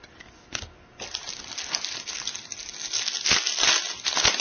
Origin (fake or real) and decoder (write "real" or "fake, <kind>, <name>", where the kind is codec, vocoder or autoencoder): real